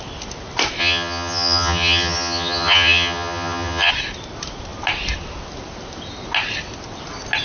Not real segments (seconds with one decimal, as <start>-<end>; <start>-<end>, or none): 0.8-3.9